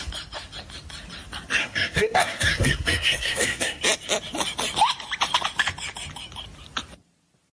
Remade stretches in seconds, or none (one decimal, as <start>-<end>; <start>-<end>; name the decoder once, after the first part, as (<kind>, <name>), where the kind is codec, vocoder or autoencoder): 1.6-3.8 (codec, SNAC)